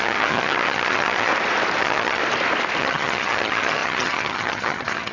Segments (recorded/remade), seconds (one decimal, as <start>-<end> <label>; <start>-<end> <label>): 0.0-1.3 remade; 1.3-1.8 recorded; 1.8-2.2 remade; 2.2-2.8 recorded; 2.8-5.1 remade